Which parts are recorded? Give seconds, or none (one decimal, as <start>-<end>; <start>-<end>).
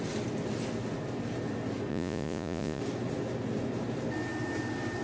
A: 0.0-1.9; 2.8-5.0